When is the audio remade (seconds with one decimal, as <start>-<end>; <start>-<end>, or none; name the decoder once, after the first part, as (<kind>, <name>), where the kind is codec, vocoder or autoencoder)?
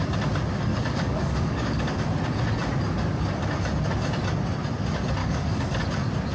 0.7-2.0 (codec, DAC); 5.2-5.8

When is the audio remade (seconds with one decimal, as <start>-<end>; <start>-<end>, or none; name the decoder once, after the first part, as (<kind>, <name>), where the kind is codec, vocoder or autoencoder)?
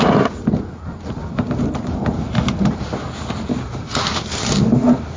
none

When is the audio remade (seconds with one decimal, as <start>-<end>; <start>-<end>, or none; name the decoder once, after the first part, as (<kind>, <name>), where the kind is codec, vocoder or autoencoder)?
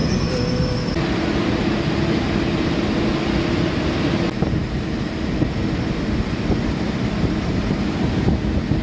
none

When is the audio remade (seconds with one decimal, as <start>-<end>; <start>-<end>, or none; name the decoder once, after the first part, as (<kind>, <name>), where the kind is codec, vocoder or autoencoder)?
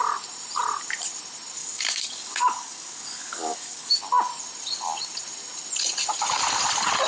1.6-4.0 (codec, DAC)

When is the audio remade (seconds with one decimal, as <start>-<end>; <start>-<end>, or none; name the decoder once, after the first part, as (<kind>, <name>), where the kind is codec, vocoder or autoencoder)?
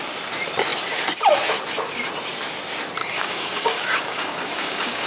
3.0-5.1 (codec, DAC)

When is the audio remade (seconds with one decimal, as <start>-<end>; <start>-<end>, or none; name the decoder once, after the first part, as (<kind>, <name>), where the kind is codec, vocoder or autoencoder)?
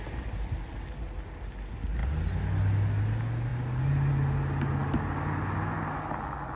none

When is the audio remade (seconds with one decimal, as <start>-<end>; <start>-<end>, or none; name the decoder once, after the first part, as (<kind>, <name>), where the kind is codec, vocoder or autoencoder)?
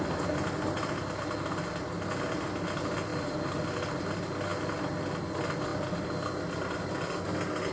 none